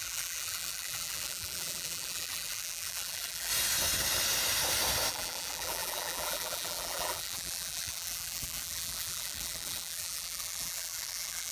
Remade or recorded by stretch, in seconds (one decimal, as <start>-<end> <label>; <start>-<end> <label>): 0.0-3.5 remade; 3.5-5.1 recorded; 5.1-11.5 remade